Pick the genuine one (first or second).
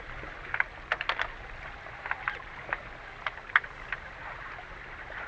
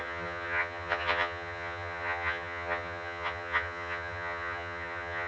first